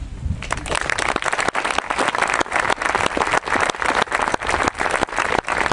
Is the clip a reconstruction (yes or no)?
no